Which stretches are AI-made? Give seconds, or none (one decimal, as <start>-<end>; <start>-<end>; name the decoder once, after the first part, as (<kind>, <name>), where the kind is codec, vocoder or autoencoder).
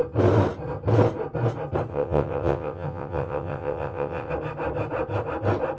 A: 1.9-4.3 (vocoder, WaveNeXt)